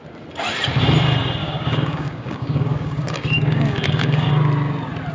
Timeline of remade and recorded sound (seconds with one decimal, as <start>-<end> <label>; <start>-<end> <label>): 0.0-1.4 recorded; 1.4-4.3 remade; 4.3-5.1 recorded